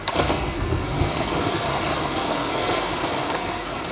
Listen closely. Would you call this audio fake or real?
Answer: fake